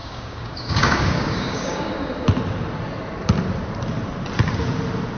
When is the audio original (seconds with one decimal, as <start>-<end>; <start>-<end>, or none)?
1.9-5.2